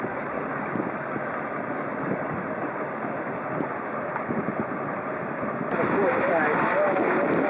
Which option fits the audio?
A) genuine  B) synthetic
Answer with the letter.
A